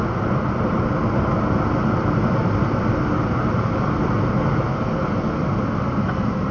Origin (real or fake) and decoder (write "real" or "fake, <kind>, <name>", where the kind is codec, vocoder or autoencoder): real